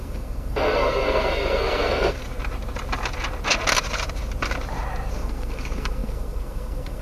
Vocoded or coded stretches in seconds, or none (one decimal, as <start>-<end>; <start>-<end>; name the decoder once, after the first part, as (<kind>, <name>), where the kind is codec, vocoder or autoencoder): 0.0-2.2 (codec, SNAC); 5.1-7.0